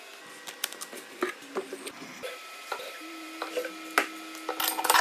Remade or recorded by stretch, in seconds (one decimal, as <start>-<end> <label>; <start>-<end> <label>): 0.0-1.4 recorded; 1.4-3.7 remade; 3.7-5.0 recorded